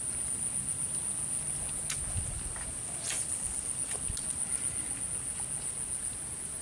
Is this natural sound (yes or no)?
yes